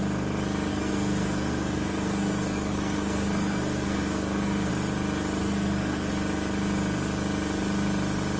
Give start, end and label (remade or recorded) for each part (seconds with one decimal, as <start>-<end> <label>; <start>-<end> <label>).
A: 0.0-0.7 recorded; 0.7-4.7 remade; 4.7-5.4 recorded; 5.4-6.1 remade; 6.1-8.4 recorded